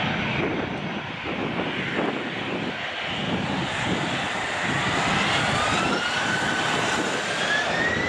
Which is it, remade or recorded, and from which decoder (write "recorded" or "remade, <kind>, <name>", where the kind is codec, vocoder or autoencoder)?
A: recorded